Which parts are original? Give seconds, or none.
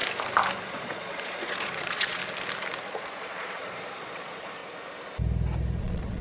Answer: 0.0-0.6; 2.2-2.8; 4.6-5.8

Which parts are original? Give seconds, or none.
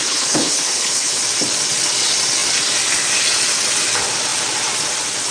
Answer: 1.2-5.3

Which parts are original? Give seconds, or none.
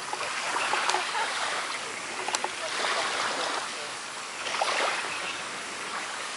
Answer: 2.2-3.7